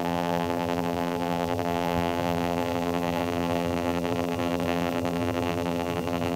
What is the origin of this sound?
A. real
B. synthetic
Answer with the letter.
B